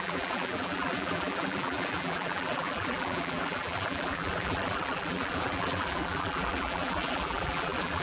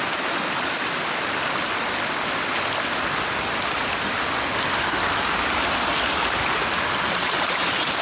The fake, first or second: first